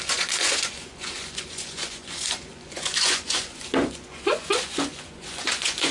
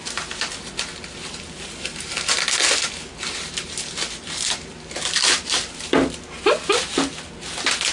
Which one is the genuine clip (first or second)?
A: second